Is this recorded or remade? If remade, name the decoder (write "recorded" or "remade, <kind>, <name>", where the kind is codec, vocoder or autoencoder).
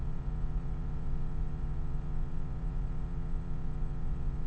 remade, vocoder, Vocos